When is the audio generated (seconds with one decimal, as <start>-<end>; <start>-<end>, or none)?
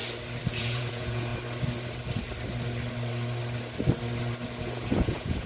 0.5-1.3; 4.6-5.5